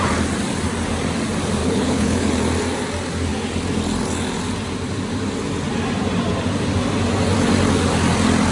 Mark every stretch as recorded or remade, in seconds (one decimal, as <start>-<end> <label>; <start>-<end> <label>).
0.0-1.6 recorded; 1.6-2.3 remade; 2.3-8.5 recorded